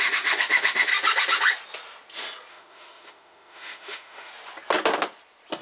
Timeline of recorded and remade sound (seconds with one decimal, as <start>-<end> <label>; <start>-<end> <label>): 0.0-0.9 remade; 0.9-2.5 recorded; 2.5-4.3 remade; 4.3-5.6 recorded